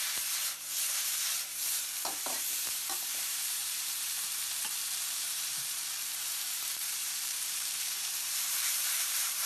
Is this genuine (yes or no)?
no